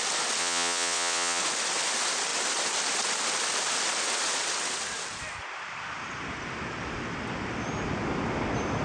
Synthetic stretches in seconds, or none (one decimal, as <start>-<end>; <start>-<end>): 0.4-1.4